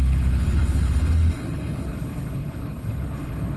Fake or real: fake